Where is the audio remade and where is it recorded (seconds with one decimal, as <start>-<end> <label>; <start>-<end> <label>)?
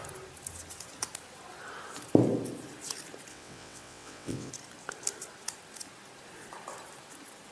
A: 0.0-3.3 recorded; 3.3-4.5 remade; 4.5-7.5 recorded